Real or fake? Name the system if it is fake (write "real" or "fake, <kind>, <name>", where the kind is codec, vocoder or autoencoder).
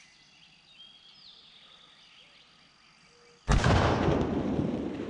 real